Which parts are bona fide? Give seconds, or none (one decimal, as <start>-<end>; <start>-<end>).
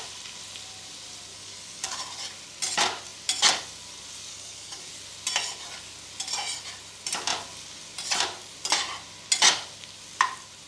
0.0-1.3; 2.0-4.3; 4.9-10.7